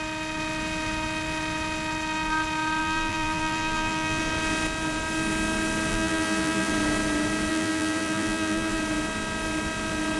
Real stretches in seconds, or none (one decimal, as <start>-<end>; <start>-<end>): 0.0-2.8; 4.2-5.9; 6.7-7.5; 8.8-10.2